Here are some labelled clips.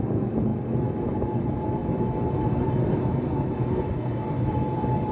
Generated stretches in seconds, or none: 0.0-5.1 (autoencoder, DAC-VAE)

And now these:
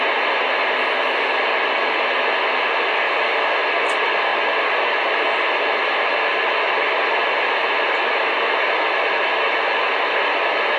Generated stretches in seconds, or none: none

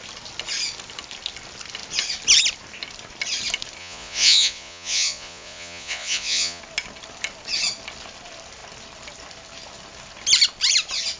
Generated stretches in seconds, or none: 3.8-6.6 (vocoder, Vocos)

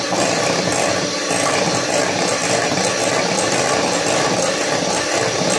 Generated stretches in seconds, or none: none

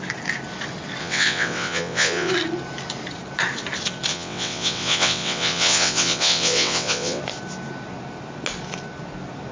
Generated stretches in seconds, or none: 1.0-2.3 (vocoder, WaveNeXt); 4.1-7.2

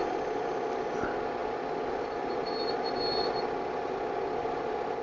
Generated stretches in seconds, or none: none